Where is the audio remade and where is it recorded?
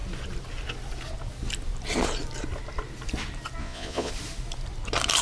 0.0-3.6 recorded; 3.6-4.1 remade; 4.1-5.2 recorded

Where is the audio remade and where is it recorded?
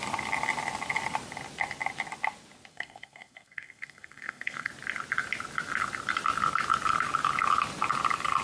0.0-2.7 recorded; 2.7-4.7 remade; 4.7-8.4 recorded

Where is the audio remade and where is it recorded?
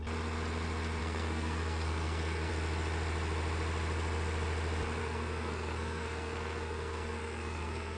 0.0-1.0 recorded; 1.0-2.5 remade; 2.5-5.0 recorded; 5.0-8.0 remade